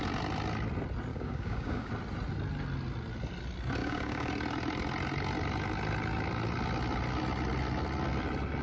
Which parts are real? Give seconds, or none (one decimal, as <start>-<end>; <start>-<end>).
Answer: 0.0-1.1; 1.9-3.8; 4.3-8.6